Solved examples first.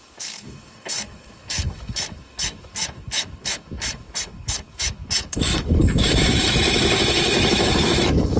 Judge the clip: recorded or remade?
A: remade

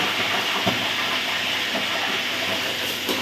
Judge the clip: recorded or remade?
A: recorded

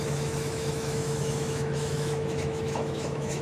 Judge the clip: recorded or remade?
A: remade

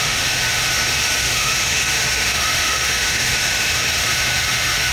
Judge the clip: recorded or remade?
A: remade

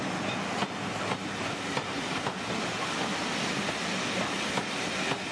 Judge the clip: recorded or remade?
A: recorded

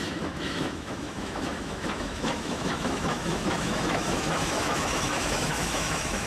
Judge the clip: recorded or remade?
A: remade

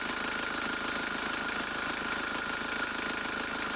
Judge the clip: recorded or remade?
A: recorded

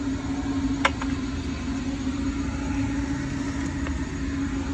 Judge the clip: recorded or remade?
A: recorded